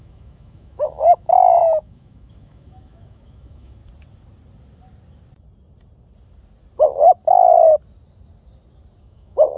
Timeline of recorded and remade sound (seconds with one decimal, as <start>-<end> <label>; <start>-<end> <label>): 0.0-3.8 remade; 3.8-9.0 recorded; 9.0-9.6 remade